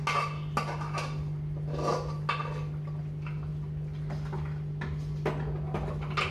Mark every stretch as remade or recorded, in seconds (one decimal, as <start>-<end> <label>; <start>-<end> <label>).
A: 0.0-6.3 recorded